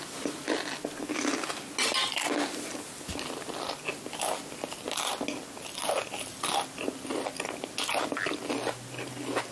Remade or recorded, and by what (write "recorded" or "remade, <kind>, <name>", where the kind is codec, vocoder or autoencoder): recorded